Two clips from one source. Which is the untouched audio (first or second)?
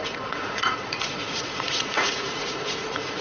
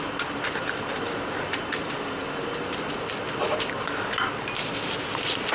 second